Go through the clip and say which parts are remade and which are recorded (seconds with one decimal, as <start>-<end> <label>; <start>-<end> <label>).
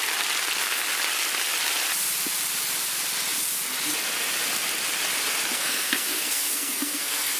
0.0-5.5 recorded; 5.5-7.4 remade